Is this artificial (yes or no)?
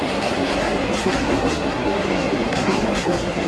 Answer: yes